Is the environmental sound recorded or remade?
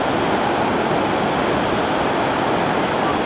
recorded